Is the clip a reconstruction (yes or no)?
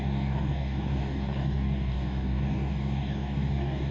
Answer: yes